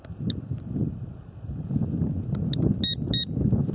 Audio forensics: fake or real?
real